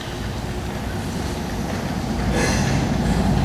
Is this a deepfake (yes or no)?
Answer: no